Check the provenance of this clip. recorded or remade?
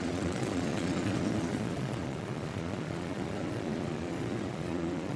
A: remade